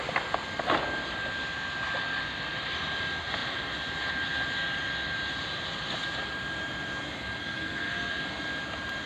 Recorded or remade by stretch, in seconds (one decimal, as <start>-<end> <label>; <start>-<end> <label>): 0.0-7.4 recorded; 7.4-8.2 remade; 8.2-9.1 recorded